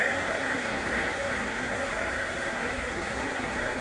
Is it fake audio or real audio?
fake